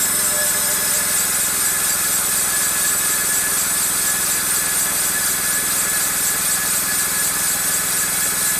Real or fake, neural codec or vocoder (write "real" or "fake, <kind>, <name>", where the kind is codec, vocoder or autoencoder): real